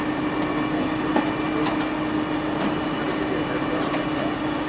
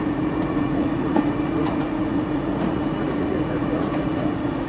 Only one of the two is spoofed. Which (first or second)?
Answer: second